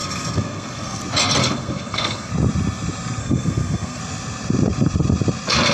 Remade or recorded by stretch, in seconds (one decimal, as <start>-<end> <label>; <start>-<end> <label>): 0.0-1.0 remade; 1.0-1.4 recorded; 1.4-2.3 remade; 2.3-3.2 recorded; 3.2-4.0 remade; 4.0-5.7 recorded